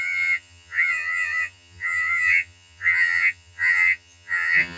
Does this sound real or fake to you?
fake